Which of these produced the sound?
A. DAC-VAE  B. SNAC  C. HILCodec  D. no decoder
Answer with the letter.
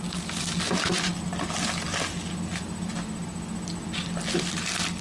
D